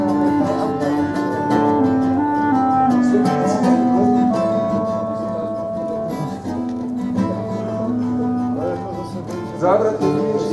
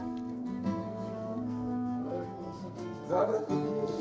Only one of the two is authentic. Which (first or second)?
first